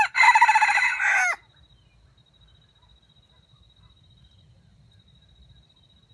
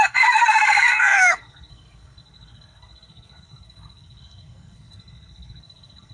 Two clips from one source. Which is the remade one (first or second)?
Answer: second